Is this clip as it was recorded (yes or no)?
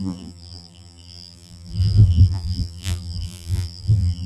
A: no